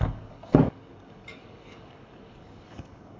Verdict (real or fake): fake